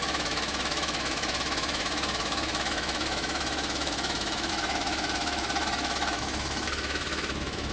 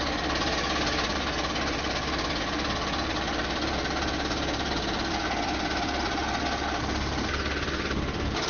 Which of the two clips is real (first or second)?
second